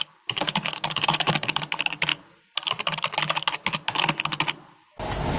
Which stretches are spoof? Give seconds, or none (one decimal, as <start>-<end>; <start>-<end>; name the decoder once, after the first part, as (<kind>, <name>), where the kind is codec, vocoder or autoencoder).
0.4-1.6 (codec, DAC)